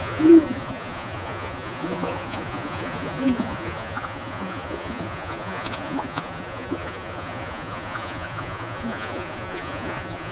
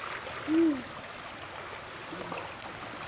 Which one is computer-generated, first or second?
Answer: first